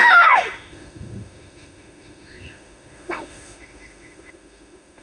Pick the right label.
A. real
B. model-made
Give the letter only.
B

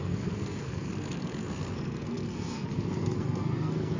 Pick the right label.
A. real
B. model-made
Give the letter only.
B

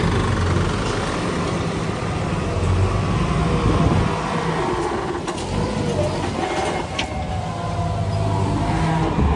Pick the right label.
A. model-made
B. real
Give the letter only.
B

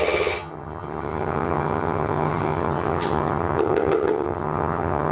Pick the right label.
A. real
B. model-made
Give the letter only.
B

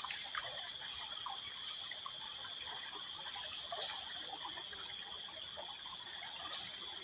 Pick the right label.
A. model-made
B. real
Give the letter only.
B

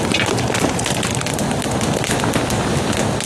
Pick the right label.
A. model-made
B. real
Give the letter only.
B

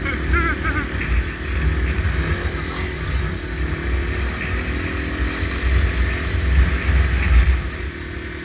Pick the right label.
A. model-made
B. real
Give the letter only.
B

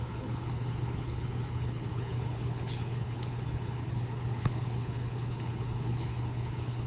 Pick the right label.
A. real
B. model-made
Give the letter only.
B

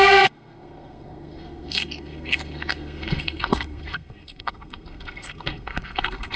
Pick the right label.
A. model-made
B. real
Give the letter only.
A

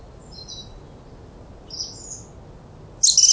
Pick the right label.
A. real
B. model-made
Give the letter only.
A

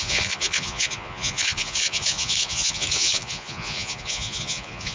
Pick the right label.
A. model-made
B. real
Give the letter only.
A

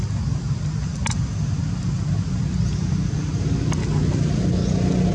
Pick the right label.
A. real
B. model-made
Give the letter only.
A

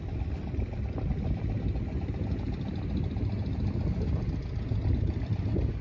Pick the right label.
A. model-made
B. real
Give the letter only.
B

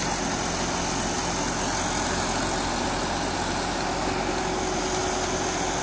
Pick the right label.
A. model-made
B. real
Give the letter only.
B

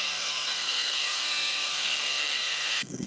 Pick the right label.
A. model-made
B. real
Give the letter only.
A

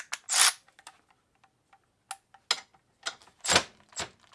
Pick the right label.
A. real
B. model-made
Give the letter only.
A